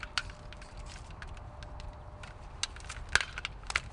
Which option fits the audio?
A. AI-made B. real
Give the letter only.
B